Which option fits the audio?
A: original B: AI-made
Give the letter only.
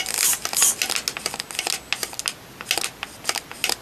A